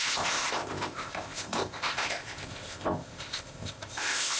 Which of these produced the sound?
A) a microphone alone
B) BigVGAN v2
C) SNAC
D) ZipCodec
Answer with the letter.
D